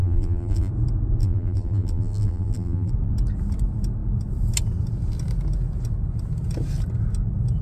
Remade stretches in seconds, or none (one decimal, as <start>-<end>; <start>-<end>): 0.0-0.7; 1.2-2.9